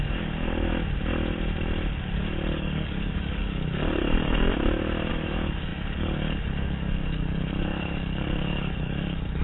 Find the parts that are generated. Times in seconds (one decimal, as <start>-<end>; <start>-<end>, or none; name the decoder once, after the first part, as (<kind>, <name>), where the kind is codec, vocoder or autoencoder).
0.0-0.7 (codec, DAC); 2.5-4.0; 5.1-9.4